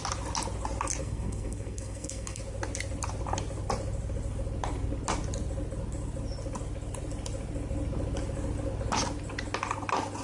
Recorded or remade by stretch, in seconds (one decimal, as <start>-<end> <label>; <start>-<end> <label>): 0.0-1.0 recorded; 1.0-2.4 remade; 2.4-10.2 recorded